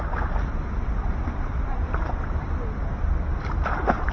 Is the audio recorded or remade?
recorded